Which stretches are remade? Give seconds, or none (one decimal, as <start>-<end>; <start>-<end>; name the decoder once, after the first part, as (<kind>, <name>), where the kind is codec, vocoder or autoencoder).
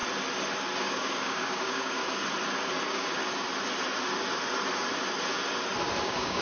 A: 0.8-2.0 (codec, DAC); 2.8-3.2; 6.0-6.4